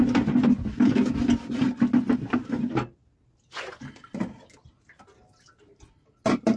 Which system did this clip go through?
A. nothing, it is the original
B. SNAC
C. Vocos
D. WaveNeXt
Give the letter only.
A